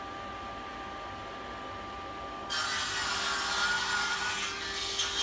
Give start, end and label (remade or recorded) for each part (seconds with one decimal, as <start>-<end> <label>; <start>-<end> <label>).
0.0-5.2 recorded